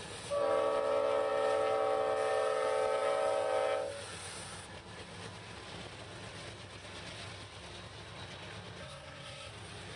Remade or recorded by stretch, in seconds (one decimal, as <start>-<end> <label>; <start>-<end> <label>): 0.0-8.8 recorded; 8.8-9.5 remade; 9.5-10.0 recorded

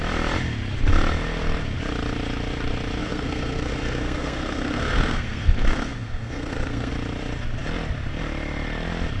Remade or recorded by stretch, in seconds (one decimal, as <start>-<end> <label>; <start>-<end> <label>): 0.0-3.0 recorded; 3.0-6.9 remade; 6.9-9.2 recorded

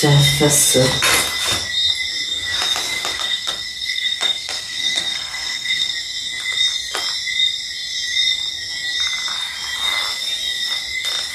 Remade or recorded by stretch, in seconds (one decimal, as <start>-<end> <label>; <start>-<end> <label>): 0.0-3.1 recorded; 3.1-5.9 remade; 5.9-11.3 recorded

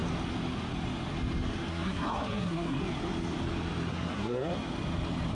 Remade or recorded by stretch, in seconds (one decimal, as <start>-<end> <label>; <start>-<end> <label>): 0.0-1.7 recorded; 1.7-2.8 remade; 2.8-3.9 recorded; 3.9-4.5 remade; 4.5-5.3 recorded

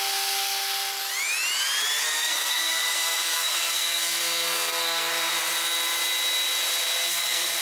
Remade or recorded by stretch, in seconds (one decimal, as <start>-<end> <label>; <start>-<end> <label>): 0.0-1.0 remade; 1.0-2.0 recorded; 2.0-5.1 remade; 5.1-7.1 recorded; 7.1-7.6 remade